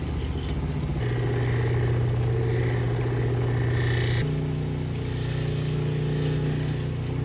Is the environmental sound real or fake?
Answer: real